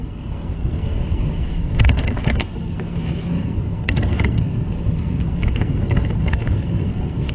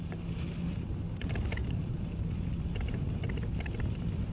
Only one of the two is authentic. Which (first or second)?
second